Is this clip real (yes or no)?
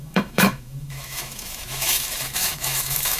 no